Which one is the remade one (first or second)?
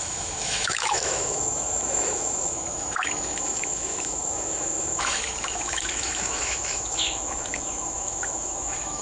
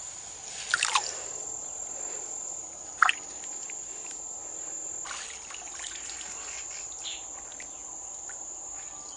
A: first